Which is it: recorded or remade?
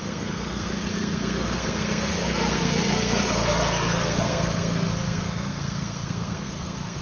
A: remade